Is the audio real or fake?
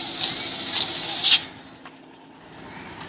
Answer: real